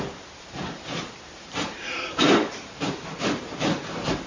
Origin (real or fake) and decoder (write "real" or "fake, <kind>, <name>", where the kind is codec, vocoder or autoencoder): fake, vocoder, BigVGAN v2